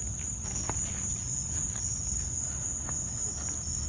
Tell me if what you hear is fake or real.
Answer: real